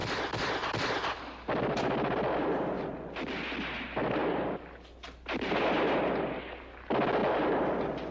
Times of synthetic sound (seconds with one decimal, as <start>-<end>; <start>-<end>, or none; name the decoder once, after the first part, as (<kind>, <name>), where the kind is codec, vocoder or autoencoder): 0.0-2.9 (vocoder, BigVGAN v2); 4.2-4.7